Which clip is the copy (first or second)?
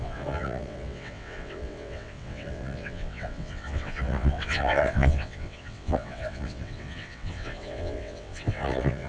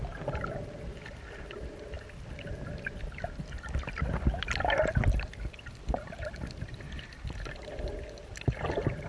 first